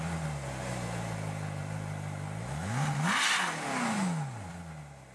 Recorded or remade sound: recorded